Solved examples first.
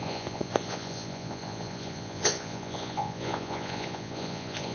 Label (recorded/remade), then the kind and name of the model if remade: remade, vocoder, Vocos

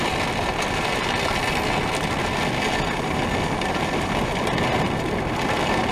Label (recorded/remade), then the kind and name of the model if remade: recorded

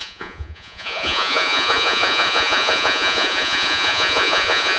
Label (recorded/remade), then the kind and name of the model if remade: remade, vocoder, Vocos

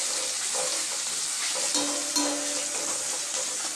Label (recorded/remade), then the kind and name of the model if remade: recorded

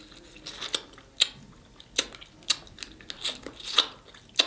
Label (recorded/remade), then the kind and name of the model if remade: recorded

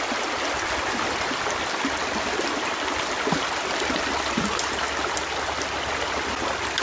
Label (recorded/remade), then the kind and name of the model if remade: recorded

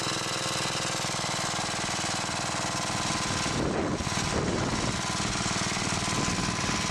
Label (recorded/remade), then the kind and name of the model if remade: recorded